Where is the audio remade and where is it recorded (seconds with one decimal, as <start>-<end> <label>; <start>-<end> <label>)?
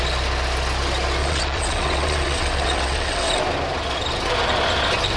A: 0.0-1.2 recorded; 1.2-3.4 remade; 3.4-5.2 recorded